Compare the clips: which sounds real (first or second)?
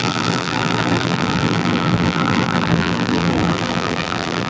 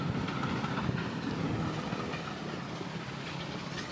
second